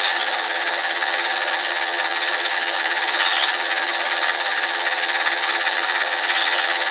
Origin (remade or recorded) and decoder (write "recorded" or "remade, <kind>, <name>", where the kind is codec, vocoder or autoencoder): remade, vocoder, HiFi-GAN